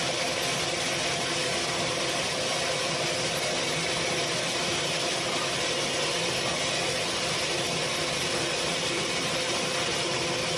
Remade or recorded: recorded